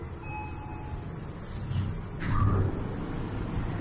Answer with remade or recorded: recorded